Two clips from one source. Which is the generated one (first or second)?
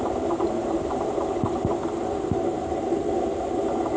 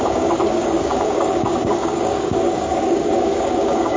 second